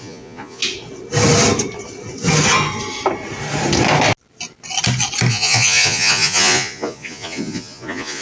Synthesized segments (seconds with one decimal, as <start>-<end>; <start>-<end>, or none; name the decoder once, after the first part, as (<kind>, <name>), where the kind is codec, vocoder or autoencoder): 0.0-0.6 (vocoder, Vocos); 5.3-8.2